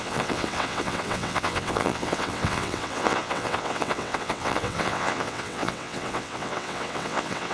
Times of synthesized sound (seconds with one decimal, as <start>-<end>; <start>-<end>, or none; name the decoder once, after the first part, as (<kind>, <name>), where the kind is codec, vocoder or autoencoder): 0.0-7.5 (vocoder, WaveNeXt)